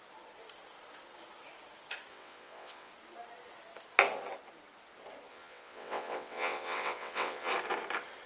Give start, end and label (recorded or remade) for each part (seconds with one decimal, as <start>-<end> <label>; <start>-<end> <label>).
0.0-2.1 recorded; 2.1-2.9 remade; 2.9-5.3 recorded; 5.3-7.5 remade; 7.5-8.3 recorded